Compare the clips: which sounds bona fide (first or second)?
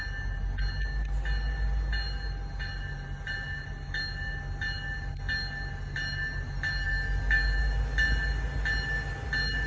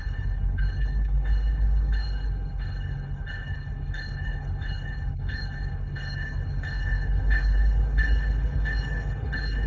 first